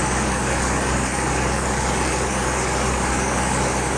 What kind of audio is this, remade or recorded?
remade